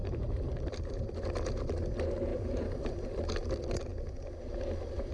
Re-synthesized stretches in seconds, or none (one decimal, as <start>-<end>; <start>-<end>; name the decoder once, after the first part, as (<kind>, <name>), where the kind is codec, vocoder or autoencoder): 0.0-1.0 (vocoder, BigVGAN v2); 2.3-3.2